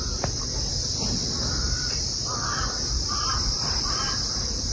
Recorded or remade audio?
remade